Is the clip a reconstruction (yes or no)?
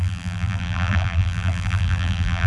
yes